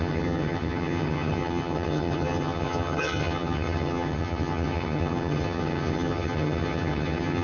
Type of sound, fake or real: fake